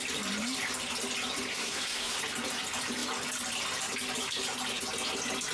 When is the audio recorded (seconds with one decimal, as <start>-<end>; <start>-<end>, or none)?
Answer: 0.0-1.5; 2.2-5.5